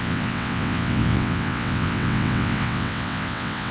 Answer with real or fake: fake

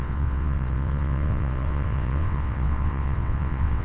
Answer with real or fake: fake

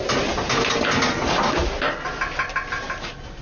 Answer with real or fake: real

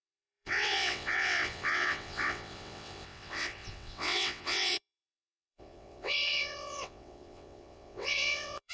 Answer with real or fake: fake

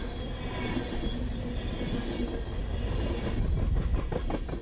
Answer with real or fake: real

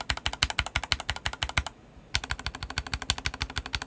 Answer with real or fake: real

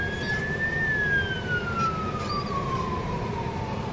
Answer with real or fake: real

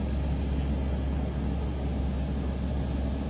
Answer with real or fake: real